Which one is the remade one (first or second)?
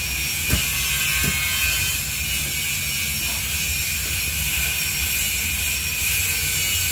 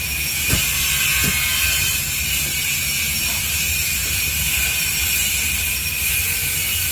second